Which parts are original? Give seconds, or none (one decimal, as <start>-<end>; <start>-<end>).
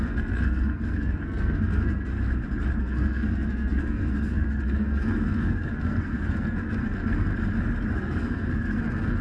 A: 2.1-2.8; 7.3-7.9